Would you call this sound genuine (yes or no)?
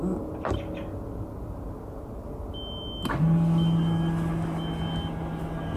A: yes